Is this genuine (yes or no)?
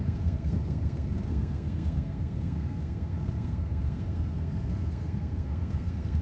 no